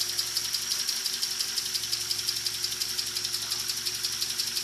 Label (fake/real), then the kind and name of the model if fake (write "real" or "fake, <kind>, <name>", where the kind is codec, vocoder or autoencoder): real